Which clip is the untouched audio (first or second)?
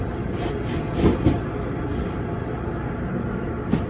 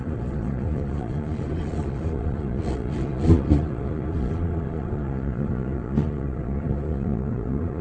first